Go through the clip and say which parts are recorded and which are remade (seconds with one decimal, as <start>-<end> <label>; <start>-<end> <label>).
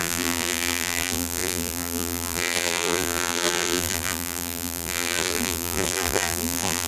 0.0-6.9 remade